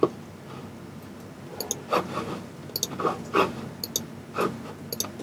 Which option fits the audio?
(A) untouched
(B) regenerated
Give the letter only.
A